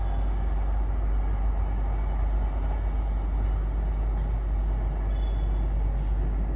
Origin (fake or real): real